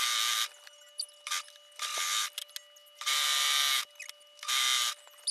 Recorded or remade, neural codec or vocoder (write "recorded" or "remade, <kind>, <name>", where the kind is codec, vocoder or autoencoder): recorded